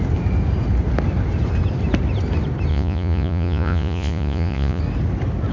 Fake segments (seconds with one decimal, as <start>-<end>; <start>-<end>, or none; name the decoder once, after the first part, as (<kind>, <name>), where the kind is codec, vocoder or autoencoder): 2.7-4.8 (vocoder, Vocos)